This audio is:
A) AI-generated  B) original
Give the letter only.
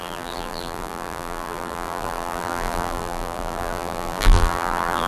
A